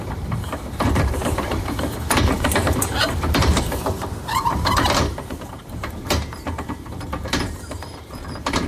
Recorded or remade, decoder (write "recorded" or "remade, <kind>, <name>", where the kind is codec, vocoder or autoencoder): remade, vocoder, BigVGAN v2